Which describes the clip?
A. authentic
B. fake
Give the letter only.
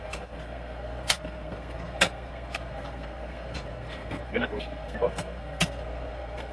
B